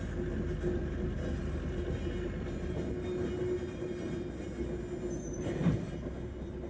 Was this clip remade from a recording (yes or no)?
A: no